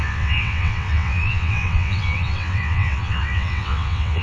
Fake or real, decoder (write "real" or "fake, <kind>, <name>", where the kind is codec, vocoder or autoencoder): fake, vocoder, WaveNeXt